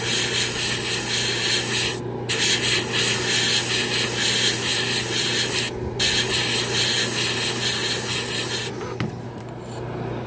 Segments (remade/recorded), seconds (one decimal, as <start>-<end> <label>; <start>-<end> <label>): 0.0-10.3 recorded